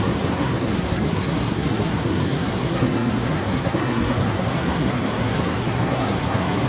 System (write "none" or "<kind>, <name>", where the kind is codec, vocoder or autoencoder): codec, SNAC